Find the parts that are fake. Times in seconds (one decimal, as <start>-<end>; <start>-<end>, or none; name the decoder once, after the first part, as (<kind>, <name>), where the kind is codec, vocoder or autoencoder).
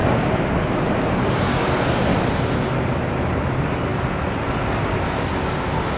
0.0-2.1 (codec, DAC)